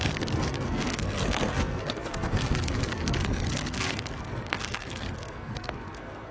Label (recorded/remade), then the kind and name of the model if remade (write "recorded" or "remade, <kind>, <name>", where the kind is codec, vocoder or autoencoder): remade, codec, SNAC